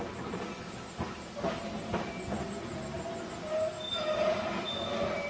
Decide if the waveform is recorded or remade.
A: recorded